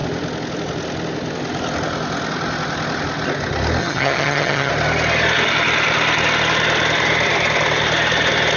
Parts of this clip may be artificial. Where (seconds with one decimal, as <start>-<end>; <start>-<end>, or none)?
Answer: 3.8-4.7